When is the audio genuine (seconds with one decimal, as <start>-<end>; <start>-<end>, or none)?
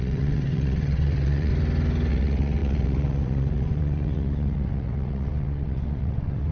1.5-2.1